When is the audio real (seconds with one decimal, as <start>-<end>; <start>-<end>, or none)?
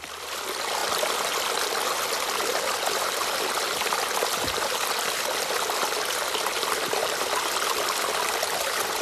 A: 0.8-2.2